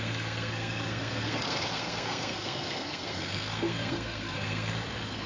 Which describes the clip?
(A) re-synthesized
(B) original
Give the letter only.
A